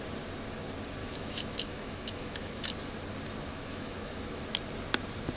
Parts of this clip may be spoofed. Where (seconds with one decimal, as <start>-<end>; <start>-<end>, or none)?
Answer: 1.0-2.6; 3.5-4.4